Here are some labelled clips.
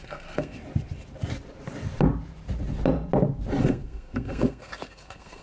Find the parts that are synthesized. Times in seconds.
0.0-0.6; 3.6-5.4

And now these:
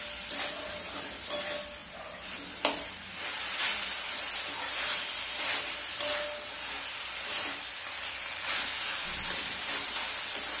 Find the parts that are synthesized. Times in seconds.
1.8-4.3

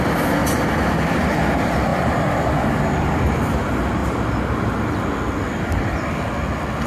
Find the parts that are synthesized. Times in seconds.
1.9-3.1

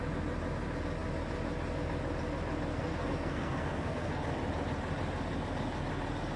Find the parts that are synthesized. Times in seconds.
2.7-4.2

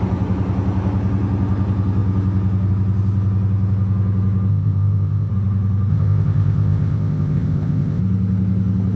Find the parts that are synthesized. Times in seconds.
4.5-5.3; 5.9-8.0